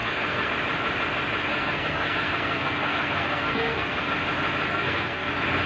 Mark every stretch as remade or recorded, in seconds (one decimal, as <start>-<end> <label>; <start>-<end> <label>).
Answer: 0.0-0.5 remade; 0.5-1.5 recorded; 1.5-4.1 remade; 4.1-4.7 recorded; 4.7-5.3 remade; 5.3-5.7 recorded